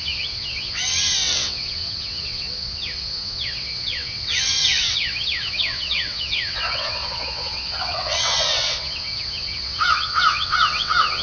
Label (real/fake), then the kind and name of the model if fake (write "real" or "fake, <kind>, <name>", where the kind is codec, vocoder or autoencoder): fake, vocoder, WaveNeXt